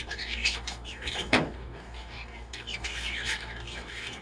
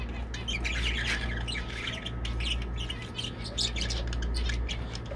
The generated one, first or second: first